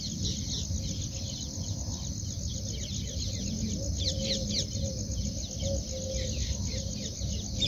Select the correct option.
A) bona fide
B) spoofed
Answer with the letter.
A